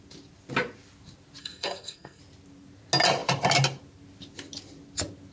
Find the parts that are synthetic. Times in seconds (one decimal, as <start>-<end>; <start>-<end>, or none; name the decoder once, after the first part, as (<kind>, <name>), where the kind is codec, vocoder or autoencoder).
1.4-2.2 (codec, SNAC)